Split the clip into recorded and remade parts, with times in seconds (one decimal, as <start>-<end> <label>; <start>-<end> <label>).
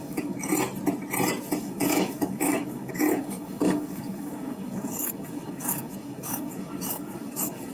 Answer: 0.0-0.5 remade; 0.5-1.6 recorded; 1.6-7.7 remade